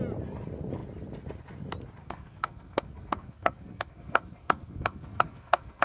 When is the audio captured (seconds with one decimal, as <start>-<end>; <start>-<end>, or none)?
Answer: 0.0-2.0